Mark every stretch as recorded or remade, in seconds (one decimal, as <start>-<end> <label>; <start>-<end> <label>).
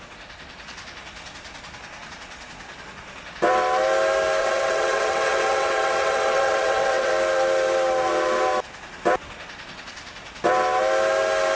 0.0-4.4 recorded; 4.4-7.1 remade; 7.1-11.6 recorded